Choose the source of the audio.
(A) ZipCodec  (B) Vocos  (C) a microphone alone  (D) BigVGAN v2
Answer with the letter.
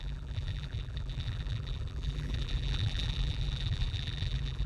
D